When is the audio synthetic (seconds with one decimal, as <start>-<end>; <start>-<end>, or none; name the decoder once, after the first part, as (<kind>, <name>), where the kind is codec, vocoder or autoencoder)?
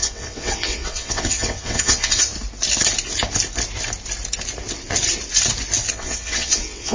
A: 0.0-2.3 (vocoder, WaveNeXt); 5.9-6.9